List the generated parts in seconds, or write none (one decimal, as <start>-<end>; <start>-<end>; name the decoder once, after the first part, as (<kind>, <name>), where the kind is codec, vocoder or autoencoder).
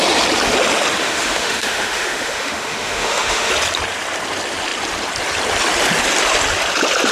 1.0-3.5 (autoencoder, DAC-VAE)